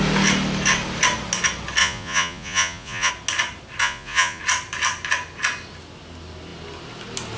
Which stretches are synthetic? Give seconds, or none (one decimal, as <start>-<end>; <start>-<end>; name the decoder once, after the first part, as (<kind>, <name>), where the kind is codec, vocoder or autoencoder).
1.8-3.1 (vocoder, Vocos); 3.8-4.4